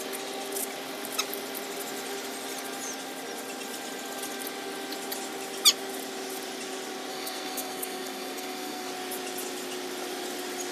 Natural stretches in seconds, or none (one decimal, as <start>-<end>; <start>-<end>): 0.0-7.1; 8.9-10.7